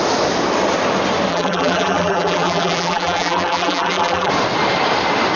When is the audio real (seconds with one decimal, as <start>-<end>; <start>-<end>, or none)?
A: 0.0-1.3; 4.3-5.4